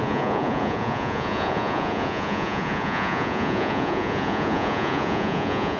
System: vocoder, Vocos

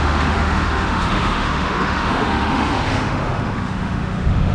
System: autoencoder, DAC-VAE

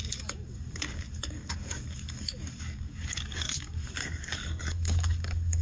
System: codec, DAC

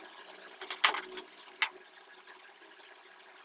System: none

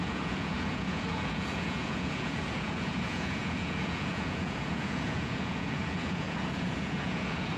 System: vocoder, Vocos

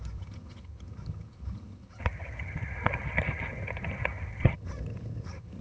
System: vocoder, HiFi-GAN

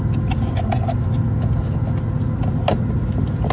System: none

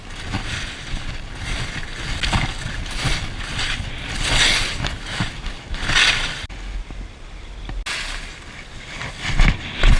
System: none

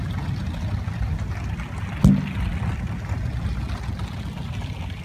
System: none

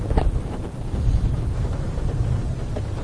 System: none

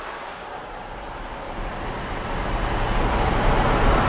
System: none